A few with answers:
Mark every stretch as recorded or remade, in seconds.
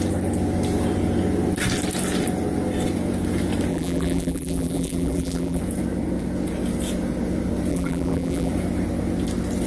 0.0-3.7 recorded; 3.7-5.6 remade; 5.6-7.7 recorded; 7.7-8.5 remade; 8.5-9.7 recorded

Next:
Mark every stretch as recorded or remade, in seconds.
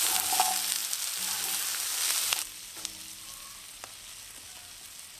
0.0-5.2 recorded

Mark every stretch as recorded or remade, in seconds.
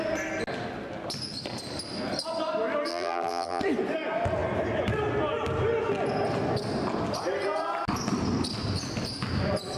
0.0-2.9 recorded; 2.9-3.6 remade; 3.6-9.8 recorded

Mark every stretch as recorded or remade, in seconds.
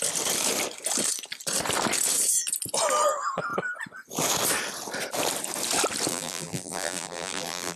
0.0-6.1 recorded; 6.1-7.8 remade